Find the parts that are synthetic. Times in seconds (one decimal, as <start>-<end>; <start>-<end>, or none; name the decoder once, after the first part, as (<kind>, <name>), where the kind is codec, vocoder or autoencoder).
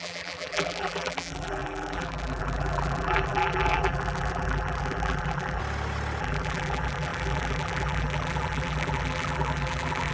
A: 0.0-5.6 (vocoder, BigVGAN v2); 6.2-10.1